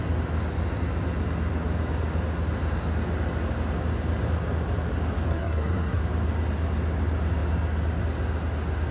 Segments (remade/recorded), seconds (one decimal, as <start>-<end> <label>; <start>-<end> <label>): 0.0-5.3 recorded; 5.3-6.0 remade; 6.0-8.9 recorded